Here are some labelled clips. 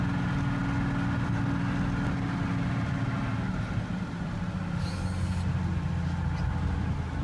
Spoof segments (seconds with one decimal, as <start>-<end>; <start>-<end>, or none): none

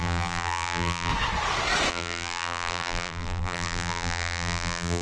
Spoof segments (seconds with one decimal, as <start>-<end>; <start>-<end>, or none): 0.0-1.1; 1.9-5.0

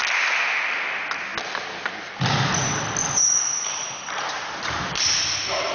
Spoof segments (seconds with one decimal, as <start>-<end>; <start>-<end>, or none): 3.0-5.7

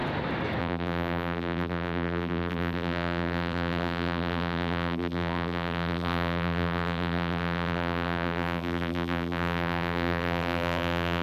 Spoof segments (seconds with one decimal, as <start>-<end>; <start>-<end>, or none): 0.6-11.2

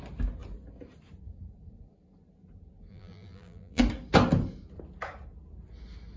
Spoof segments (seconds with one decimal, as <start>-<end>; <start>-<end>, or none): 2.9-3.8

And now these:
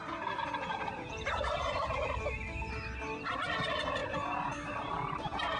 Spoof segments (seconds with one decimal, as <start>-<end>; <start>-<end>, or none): 0.7-1.9; 4.0-4.5

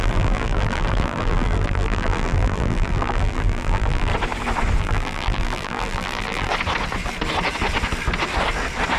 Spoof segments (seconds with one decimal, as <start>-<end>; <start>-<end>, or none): 0.0-4.1; 4.8-6.5